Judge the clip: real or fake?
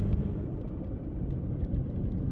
real